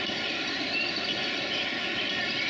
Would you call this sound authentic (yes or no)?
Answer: yes